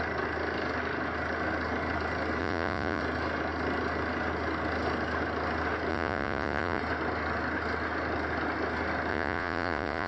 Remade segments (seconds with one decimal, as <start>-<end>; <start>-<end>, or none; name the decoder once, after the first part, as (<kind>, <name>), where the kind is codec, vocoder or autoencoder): 2.4-3.0 (vocoder, Vocos); 5.9-6.8; 9.1-10.1